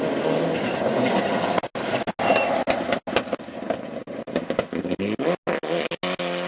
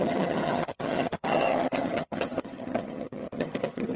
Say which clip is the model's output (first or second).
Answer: second